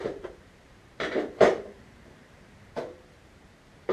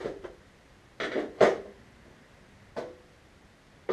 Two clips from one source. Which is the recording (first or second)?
second